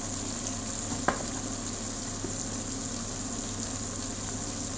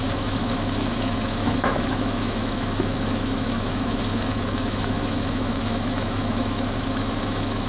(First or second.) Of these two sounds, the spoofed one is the second